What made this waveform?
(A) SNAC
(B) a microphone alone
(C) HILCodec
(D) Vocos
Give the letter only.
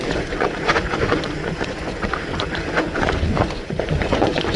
D